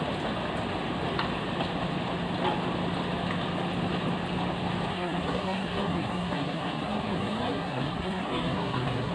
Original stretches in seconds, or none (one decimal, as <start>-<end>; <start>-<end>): 0.0-4.9